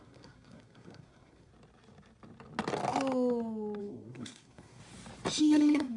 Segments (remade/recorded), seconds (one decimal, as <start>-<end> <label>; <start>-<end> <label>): 0.0-1.5 remade; 1.5-3.8 recorded; 3.8-4.8 remade; 4.8-5.4 recorded; 5.4-6.0 remade